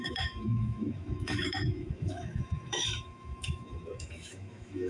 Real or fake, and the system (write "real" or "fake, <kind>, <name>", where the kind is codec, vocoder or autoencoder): fake, autoencoder, DAC-VAE